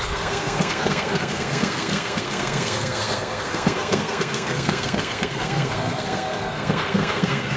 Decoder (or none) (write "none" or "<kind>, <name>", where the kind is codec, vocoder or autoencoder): codec, SNAC